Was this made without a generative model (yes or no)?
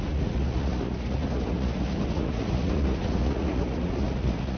no